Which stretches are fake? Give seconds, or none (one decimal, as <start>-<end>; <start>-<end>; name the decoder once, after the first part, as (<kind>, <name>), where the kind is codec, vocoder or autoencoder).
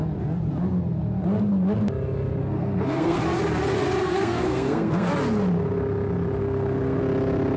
2.4-3.2 (codec, SNAC); 3.7-5.1; 6.4-7.0